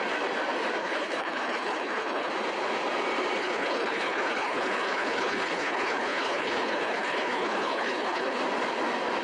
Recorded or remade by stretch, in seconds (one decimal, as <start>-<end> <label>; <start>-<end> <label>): 0.0-0.8 recorded; 0.8-2.3 remade; 2.3-3.4 recorded; 3.4-8.4 remade; 8.4-9.2 recorded